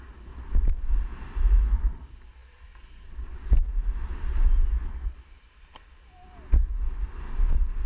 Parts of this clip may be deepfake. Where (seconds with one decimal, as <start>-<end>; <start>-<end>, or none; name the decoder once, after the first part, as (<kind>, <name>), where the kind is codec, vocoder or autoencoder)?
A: none